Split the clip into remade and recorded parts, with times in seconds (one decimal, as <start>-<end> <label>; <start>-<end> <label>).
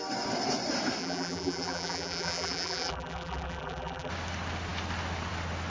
0.0-1.0 recorded; 1.0-4.1 remade; 4.1-5.7 recorded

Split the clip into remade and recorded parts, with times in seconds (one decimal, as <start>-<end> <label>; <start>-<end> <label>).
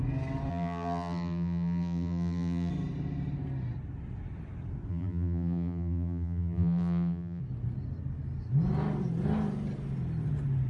0.0-0.5 recorded; 0.5-2.7 remade; 2.7-4.9 recorded; 4.9-7.4 remade; 7.4-10.7 recorded